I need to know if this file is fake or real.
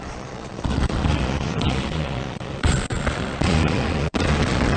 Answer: fake